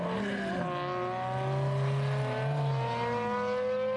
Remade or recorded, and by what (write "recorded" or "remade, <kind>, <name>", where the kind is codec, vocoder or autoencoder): recorded